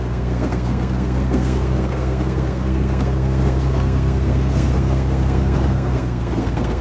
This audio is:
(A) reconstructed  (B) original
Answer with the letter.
A